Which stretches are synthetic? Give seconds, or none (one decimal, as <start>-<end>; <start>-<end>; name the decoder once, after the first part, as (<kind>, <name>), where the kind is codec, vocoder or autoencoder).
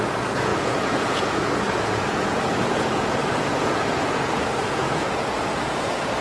0.0-6.2 (vocoder, Vocos)